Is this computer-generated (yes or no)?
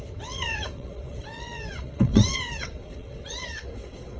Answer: yes